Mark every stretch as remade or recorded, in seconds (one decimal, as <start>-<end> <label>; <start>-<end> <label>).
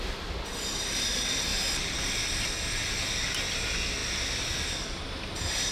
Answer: 0.0-1.5 recorded; 1.5-2.0 remade; 2.0-5.7 recorded